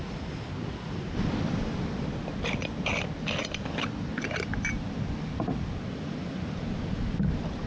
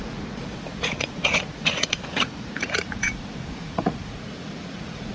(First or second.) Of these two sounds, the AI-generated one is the second